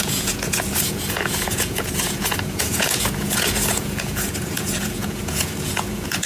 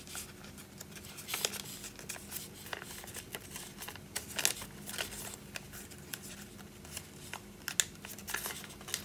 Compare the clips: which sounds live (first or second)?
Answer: second